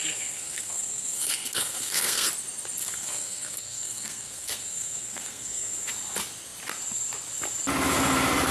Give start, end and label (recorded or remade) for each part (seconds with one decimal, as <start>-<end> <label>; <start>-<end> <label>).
0.0-2.3 remade; 2.3-2.8 recorded; 2.8-5.9 remade; 5.9-8.5 recorded